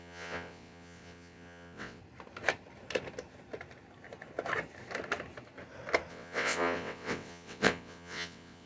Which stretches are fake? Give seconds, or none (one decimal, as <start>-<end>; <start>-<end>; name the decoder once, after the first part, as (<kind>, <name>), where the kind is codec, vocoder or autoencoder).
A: 0.0-2.0 (vocoder, WaveNeXt); 6.1-8.7